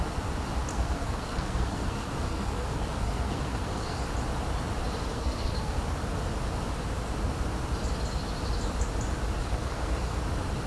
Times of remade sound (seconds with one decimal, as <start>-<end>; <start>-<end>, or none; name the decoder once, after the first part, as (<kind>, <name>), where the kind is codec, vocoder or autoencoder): 0.7-4.0 (codec, SNAC); 5.1-5.8; 9.4-10.2